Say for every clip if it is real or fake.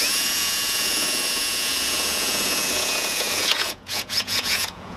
fake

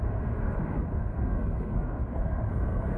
fake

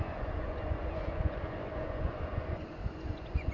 fake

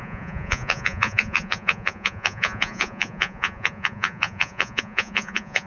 fake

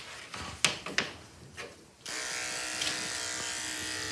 real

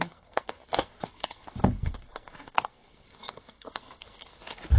fake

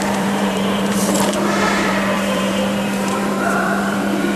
fake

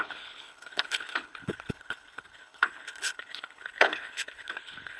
fake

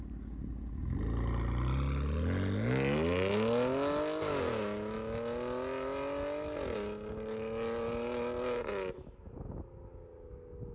real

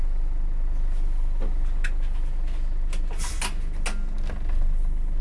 real